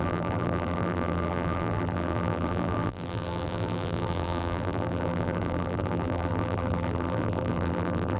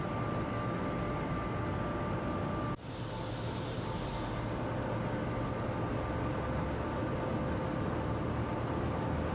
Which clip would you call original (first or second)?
second